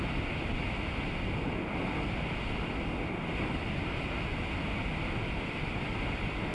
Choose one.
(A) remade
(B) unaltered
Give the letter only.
B